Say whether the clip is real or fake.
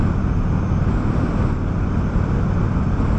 real